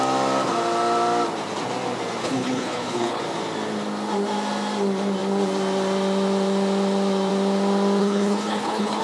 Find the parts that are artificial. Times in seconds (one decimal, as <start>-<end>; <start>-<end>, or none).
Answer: 2.2-3.2; 8.0-9.0